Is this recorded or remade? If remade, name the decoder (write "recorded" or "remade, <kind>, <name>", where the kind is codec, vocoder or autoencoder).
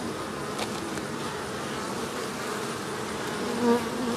recorded